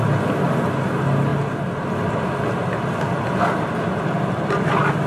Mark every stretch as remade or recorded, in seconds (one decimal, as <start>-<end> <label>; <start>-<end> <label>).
0.0-5.1 recorded